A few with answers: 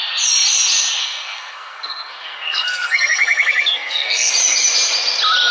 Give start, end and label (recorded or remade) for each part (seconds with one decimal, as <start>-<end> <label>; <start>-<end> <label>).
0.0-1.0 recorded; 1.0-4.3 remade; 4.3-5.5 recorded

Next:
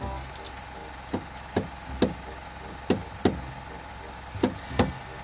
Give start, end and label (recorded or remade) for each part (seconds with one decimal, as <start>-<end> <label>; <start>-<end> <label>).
0.0-5.2 recorded

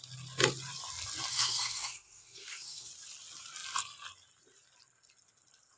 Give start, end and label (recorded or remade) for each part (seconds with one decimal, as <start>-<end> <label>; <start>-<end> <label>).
0.0-1.3 recorded; 1.3-2.9 remade; 2.9-5.8 recorded